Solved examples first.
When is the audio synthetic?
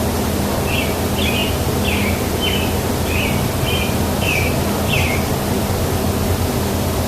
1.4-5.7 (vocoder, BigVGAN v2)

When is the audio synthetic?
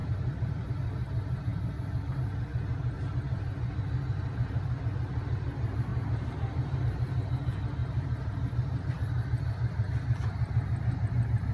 0.0-0.7 (vocoder, BigVGAN v2); 5.9-6.8; 7.8-8.9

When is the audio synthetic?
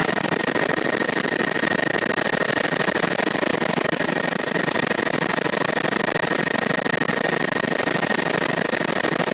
0.0-0.6 (vocoder, BigVGAN v2); 3.5-4.6